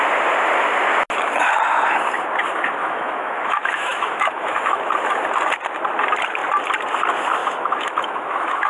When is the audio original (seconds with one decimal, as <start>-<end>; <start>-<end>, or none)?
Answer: 0.0-2.8; 4.8-7.4